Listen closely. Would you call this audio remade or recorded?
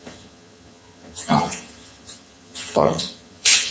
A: remade